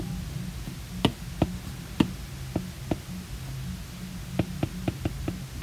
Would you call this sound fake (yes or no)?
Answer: no